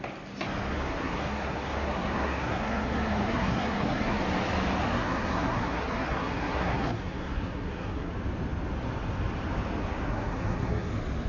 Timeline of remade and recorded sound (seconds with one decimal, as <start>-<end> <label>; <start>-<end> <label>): 0.0-0.7 recorded; 0.7-4.2 remade; 4.2-4.8 recorded; 4.8-8.1 remade; 8.1-9.8 recorded; 9.8-10.9 remade; 10.9-11.3 recorded